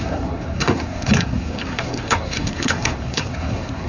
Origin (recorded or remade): remade